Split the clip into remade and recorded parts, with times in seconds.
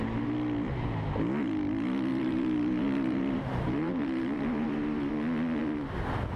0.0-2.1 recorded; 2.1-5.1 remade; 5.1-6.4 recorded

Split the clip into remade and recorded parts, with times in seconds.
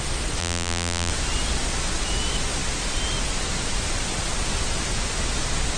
0.0-0.4 recorded; 0.4-1.1 remade; 1.1-5.8 recorded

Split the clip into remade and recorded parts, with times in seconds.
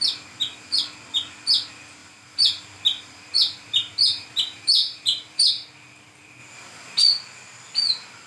0.0-2.0 recorded; 2.0-5.5 remade; 5.5-8.3 recorded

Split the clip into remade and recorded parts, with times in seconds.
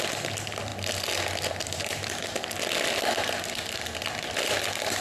0.0-0.7 remade; 0.7-3.7 recorded; 3.7-5.0 remade